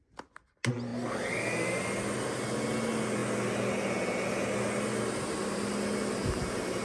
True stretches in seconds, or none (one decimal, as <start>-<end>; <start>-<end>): 0.0-6.8